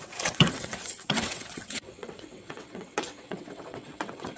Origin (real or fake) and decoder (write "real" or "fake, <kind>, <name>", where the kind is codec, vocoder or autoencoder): fake, vocoder, WaveNeXt